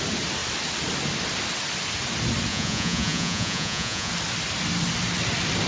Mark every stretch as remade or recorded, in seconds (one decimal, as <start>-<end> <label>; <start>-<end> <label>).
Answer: 0.0-2.5 recorded; 2.5-4.1 remade; 4.1-5.7 recorded